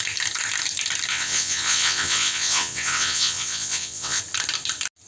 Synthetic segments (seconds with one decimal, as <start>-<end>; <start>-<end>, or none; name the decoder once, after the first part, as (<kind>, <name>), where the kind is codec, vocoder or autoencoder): 1.1-4.2 (vocoder, WaveNeXt)